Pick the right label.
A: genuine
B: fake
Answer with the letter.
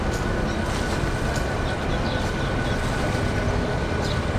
A